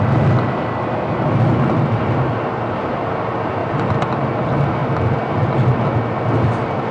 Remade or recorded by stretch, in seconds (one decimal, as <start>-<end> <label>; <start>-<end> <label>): 0.0-6.9 recorded